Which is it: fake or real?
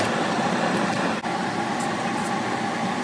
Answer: real